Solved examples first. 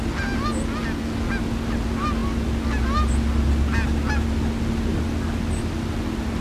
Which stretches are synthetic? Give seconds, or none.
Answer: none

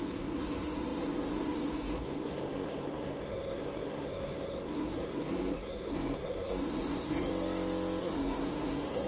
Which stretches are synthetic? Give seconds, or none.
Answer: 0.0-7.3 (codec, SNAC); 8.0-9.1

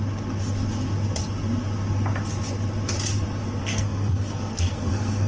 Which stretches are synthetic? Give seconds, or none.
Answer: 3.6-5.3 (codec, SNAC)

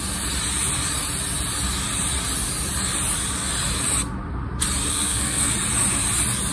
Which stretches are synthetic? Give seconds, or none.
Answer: 4.9-5.5 (codec, SNAC)

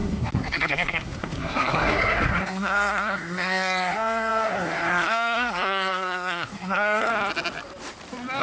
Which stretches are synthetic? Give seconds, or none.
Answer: 0.0-7.1 (codec, SNAC)

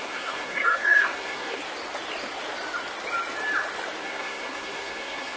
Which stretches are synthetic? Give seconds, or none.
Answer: 0.0-1.6 (codec, SNAC); 4.0-5.4

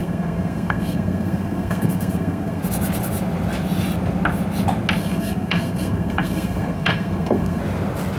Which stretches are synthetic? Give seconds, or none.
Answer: 0.0-2.6 (codec, SNAC); 5.0-7.6